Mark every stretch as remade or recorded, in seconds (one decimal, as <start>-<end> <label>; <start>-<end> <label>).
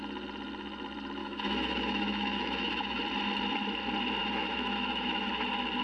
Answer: 0.0-1.2 recorded; 1.2-3.0 remade; 3.0-4.2 recorded; 4.2-5.3 remade; 5.3-5.8 recorded